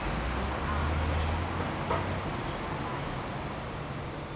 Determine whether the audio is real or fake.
real